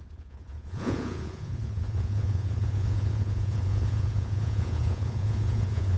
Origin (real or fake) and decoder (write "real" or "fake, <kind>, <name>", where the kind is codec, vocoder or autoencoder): fake, vocoder, Vocos